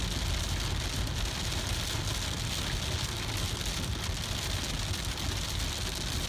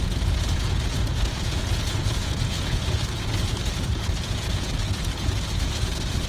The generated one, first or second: second